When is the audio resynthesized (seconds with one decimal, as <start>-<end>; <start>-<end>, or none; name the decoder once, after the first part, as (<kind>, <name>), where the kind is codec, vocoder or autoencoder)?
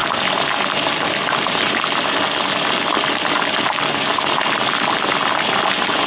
none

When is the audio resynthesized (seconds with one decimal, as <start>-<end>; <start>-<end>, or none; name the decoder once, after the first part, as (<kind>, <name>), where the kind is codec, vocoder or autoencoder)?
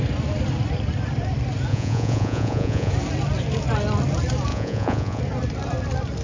1.7-2.9 (vocoder, Vocos); 4.5-5.2